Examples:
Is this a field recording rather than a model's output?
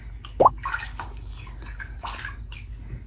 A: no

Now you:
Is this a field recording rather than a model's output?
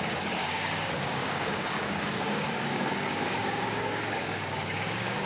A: no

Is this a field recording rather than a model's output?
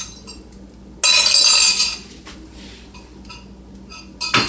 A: yes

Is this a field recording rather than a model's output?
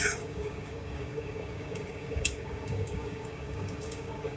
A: no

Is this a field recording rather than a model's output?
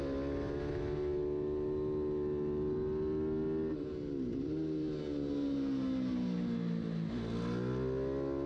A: yes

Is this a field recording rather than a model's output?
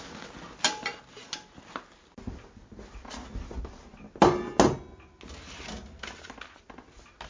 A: yes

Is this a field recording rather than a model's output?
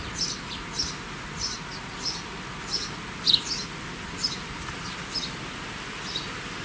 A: yes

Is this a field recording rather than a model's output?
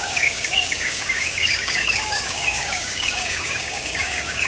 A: no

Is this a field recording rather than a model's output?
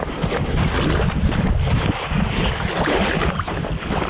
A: yes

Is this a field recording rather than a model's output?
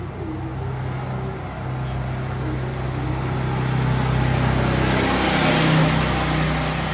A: yes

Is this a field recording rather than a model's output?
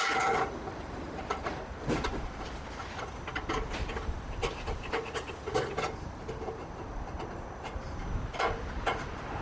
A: yes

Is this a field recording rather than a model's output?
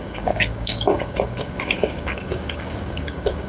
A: no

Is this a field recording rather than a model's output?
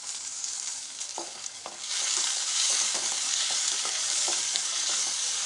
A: no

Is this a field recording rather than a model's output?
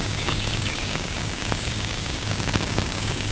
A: no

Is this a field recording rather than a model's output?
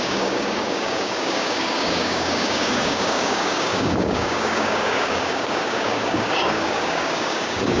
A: no